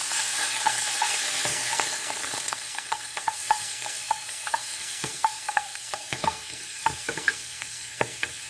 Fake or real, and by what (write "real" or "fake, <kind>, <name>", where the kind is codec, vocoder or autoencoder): fake, codec, SNAC